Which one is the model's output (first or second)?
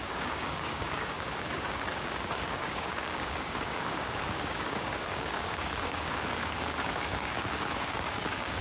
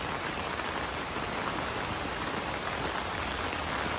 first